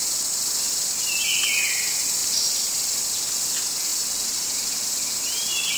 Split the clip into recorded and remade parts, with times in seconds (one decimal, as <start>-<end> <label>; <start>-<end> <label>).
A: 0.0-3.9 recorded; 3.9-4.8 remade; 4.8-5.8 recorded